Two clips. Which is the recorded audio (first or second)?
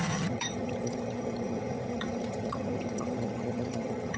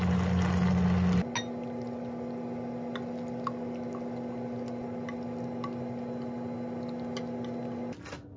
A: second